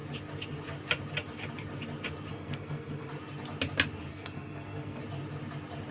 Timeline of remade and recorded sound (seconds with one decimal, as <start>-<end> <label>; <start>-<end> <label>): 0.0-2.3 recorded; 2.3-3.1 remade; 3.1-4.1 recorded; 4.1-5.0 remade; 5.0-5.9 recorded